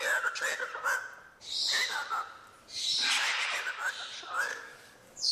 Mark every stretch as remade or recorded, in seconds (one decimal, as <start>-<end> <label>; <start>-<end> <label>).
0.0-4.5 recorded; 4.5-5.3 remade